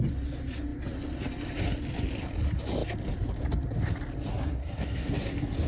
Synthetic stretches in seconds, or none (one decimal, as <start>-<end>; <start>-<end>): 4.3-5.3